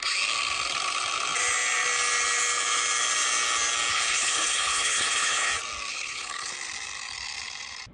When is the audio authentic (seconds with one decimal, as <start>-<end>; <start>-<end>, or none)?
0.0-3.9; 5.5-5.9; 6.5-7.9